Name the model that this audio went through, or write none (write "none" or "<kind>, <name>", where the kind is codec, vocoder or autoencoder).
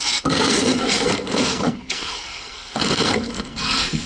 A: codec, SNAC